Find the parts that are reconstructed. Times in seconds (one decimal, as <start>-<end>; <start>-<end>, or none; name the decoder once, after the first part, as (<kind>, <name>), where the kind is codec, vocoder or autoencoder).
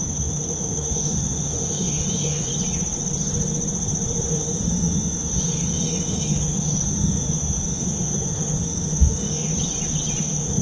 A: 0.0-2.5 (autoencoder, DAC-VAE); 4.3-9.5; 10.2-10.6